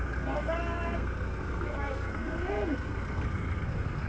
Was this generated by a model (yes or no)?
yes